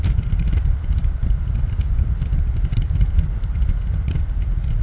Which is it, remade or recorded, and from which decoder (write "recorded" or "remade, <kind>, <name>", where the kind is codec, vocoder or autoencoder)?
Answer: recorded